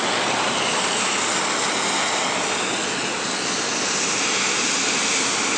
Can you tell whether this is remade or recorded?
recorded